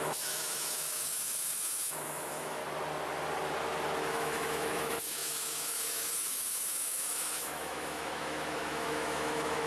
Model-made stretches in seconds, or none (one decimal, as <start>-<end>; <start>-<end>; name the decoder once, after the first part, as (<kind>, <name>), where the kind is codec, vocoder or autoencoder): 0.0-2.6 (autoencoder, DAC-VAE); 4.0-9.7